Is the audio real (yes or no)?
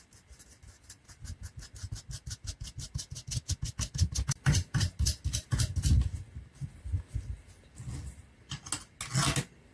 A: yes